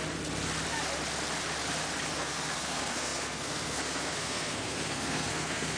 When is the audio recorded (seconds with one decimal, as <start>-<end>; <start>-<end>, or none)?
0.0-2.1